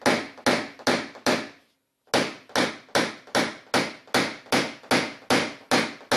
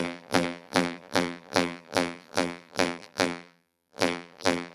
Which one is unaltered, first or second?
first